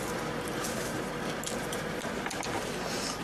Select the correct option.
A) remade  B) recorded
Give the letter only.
B